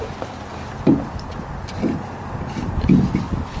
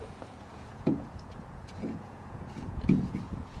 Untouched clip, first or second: first